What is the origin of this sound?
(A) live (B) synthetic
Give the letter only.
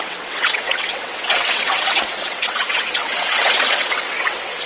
B